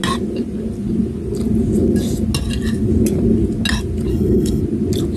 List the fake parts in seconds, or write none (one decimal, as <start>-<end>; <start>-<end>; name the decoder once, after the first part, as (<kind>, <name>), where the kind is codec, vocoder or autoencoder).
4.1-4.6 (codec, HILCodec)